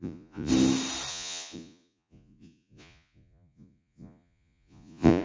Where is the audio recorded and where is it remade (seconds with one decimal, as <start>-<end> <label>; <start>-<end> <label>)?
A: 0.0-0.5 remade; 0.5-1.1 recorded; 1.1-5.2 remade